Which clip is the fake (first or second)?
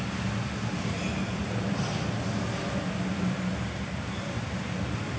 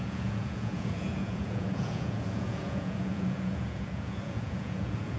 second